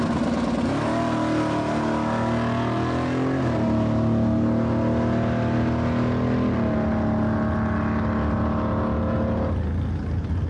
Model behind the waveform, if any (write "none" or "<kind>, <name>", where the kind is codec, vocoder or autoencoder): none